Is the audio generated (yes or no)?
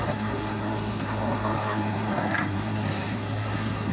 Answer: yes